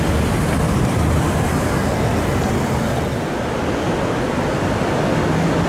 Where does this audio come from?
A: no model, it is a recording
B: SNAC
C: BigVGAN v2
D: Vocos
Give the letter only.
A